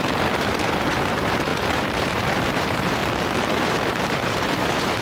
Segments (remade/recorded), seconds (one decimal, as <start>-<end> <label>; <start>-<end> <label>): 0.0-3.0 remade; 3.0-3.6 recorded; 3.6-5.0 remade